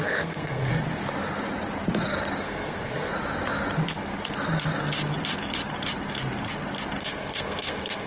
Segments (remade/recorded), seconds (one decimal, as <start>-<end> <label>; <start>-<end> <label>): 0.0-0.7 remade; 0.7-2.4 recorded; 2.4-3.1 remade; 3.1-7.0 recorded; 7.0-8.1 remade